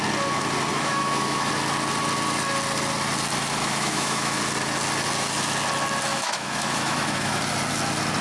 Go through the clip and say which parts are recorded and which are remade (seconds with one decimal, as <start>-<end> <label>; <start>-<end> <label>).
0.0-0.7 recorded; 0.7-1.5 remade; 1.5-3.6 recorded; 3.6-4.4 remade; 4.4-6.1 recorded; 6.1-7.4 remade; 7.4-8.2 recorded